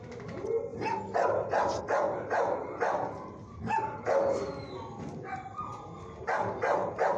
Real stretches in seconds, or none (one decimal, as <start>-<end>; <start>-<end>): 0.0-7.2

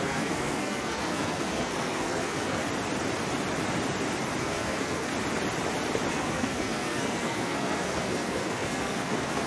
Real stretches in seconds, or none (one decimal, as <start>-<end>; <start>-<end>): 2.6-4.4; 5.1-6.1

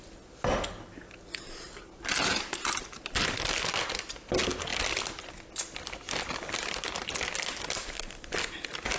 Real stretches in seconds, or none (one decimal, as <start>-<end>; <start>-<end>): 0.0-9.0

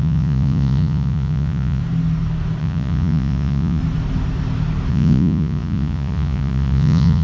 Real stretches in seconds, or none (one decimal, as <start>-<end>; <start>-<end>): 1.8-2.6; 3.8-4.9

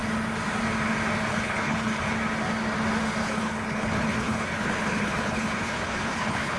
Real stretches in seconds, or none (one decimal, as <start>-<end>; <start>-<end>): 0.0-1.3; 2.0-3.2